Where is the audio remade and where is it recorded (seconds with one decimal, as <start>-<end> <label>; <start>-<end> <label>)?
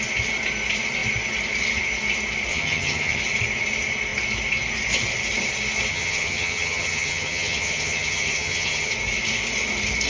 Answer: 0.0-2.5 recorded; 2.5-3.2 remade; 3.2-5.9 recorded; 5.9-8.9 remade; 8.9-10.1 recorded